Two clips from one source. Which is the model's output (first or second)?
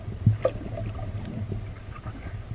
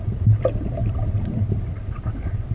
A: second